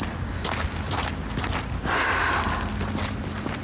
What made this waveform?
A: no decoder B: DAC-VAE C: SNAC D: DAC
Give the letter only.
A